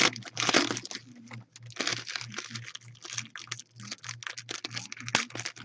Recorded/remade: recorded